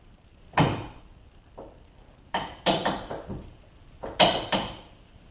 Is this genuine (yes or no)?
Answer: yes